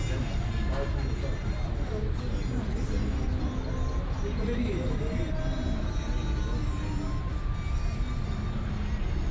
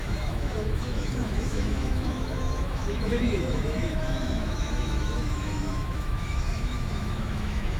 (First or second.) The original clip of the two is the first